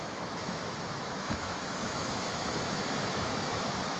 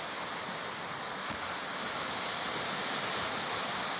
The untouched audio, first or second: second